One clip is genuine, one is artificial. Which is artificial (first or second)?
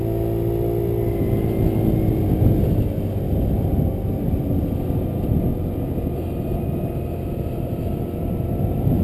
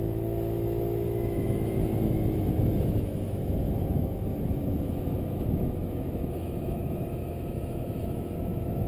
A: second